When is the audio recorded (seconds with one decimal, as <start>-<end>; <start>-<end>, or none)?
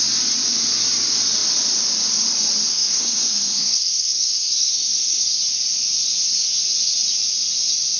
0.0-2.7; 5.4-8.0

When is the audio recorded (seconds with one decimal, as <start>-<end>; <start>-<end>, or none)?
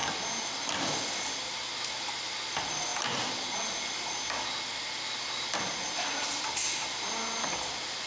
0.0-8.1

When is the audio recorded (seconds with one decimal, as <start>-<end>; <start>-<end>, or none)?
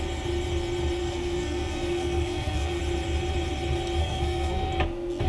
0.0-1.0; 2.8-4.0; 4.7-5.3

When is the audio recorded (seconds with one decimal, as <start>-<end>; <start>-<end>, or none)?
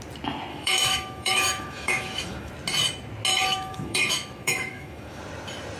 0.0-0.5; 2.5-3.3; 5.2-5.8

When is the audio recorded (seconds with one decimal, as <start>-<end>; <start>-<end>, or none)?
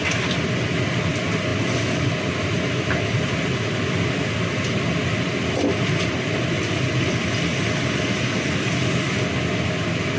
0.0-10.2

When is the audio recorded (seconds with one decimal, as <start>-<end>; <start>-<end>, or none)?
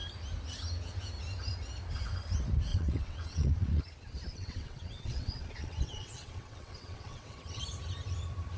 0.0-2.7; 3.8-4.3; 7.6-8.6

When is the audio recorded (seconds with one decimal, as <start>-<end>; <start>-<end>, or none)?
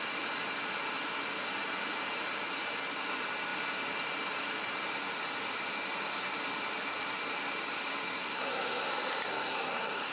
0.0-8.1; 8.9-9.3